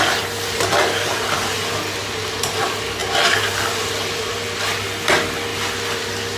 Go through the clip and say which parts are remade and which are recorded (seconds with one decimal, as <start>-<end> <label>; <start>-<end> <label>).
0.0-6.4 recorded